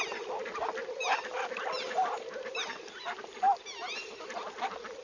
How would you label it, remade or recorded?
recorded